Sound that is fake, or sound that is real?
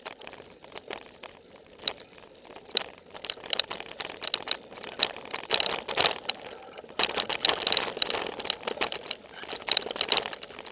real